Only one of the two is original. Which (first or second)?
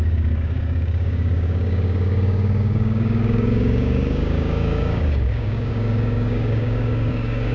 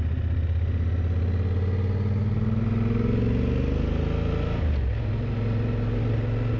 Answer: second